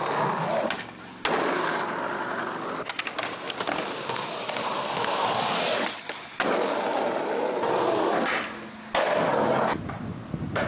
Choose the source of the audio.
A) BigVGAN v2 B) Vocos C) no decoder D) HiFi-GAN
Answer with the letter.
C